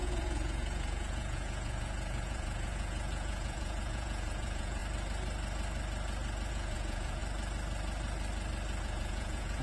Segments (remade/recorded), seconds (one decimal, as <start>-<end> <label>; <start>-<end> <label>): 0.0-4.8 remade; 4.8-6.5 recorded; 6.5-7.2 remade; 7.2-8.8 recorded; 8.8-9.6 remade